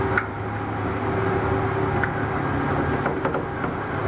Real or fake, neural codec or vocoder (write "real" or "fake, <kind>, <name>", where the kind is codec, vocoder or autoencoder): real